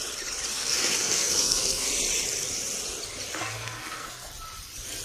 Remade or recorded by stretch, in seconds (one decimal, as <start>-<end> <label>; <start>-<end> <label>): 0.0-0.5 recorded; 0.5-1.9 remade; 1.9-3.4 recorded; 3.4-4.3 remade; 4.3-5.0 recorded